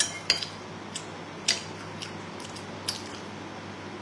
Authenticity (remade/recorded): recorded